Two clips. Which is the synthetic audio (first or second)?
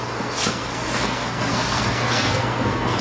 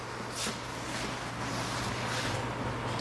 first